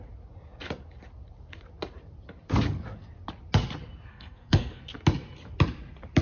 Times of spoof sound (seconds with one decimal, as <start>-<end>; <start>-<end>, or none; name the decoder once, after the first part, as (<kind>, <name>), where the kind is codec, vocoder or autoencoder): 4.1-4.8 (codec, SNAC)